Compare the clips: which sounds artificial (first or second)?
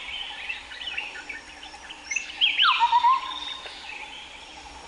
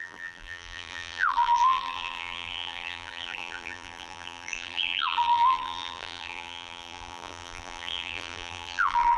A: second